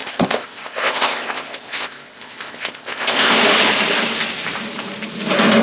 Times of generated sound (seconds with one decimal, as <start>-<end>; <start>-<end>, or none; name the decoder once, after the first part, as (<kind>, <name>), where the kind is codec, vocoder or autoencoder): 0.0-3.4 (codec, ZipCodec)